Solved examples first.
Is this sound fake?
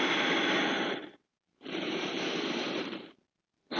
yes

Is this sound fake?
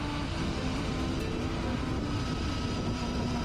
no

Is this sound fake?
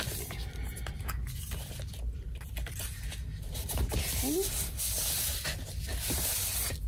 no